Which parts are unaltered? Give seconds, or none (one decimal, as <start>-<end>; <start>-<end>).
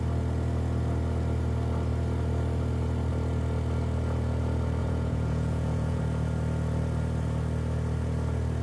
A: 0.0-4.8; 6.0-8.6